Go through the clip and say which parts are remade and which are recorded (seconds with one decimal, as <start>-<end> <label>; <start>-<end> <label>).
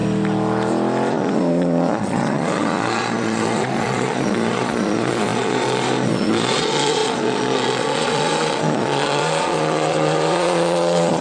0.0-1.1 recorded; 1.1-11.2 remade